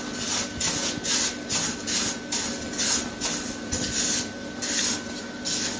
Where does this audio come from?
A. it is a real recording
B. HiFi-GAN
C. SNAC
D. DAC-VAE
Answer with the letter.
A